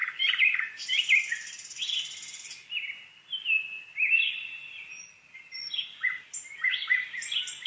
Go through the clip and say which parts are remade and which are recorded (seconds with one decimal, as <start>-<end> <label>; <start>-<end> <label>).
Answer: 0.0-1.2 remade; 1.2-7.7 recorded